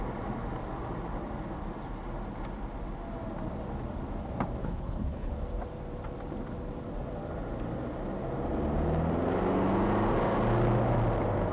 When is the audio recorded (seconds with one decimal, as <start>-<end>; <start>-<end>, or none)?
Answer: 0.0-4.6; 5.3-11.5